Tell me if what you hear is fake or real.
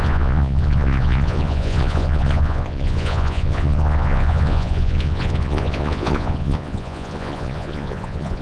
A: fake